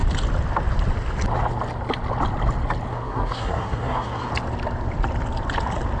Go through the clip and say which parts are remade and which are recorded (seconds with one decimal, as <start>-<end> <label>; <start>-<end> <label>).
0.0-2.9 recorded; 2.9-4.3 remade; 4.3-6.0 recorded